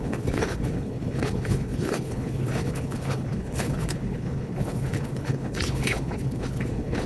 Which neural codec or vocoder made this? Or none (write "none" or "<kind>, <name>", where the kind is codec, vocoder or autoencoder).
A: codec, HILCodec